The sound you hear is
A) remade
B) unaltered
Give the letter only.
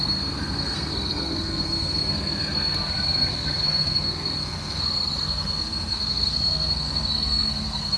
A